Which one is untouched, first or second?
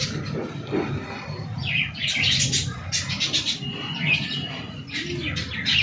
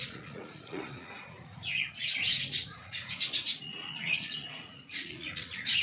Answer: first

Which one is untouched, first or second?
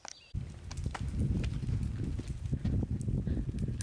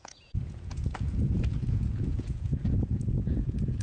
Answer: first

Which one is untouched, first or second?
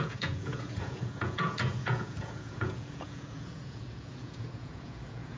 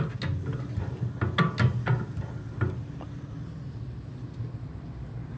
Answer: second